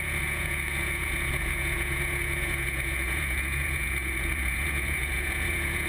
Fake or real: fake